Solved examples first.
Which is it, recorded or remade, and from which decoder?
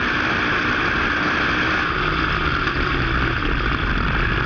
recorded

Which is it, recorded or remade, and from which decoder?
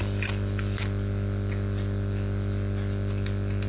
recorded